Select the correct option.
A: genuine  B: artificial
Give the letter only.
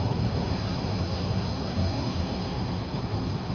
B